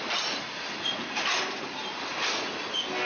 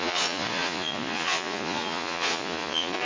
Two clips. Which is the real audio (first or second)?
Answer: first